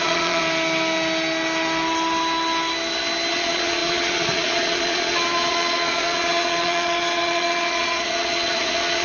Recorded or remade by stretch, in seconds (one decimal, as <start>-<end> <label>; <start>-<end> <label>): 0.0-0.4 remade; 0.4-3.3 recorded; 3.3-9.0 remade